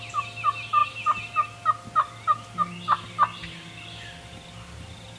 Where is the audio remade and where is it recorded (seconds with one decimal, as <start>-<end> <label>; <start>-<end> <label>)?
0.0-5.2 recorded